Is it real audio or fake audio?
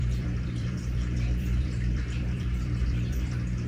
fake